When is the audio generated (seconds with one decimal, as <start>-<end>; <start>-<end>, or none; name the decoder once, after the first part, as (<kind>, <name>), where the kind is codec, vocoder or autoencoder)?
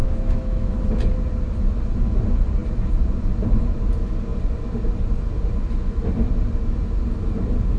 0.0-0.8 (autoencoder, DAC-VAE)